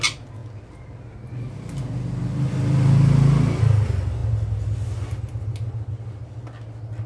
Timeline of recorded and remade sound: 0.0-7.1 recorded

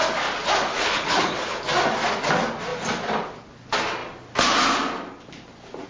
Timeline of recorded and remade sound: 0.0-0.7 recorded; 0.7-1.6 remade; 1.6-5.9 recorded